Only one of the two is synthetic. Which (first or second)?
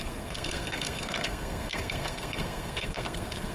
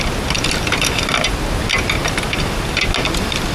first